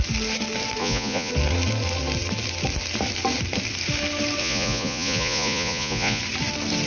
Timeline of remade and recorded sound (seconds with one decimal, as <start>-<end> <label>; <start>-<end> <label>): 0.0-0.8 recorded; 0.8-1.3 remade; 1.3-4.4 recorded; 4.4-6.2 remade; 6.2-6.9 recorded